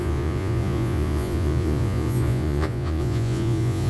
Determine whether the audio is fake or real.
fake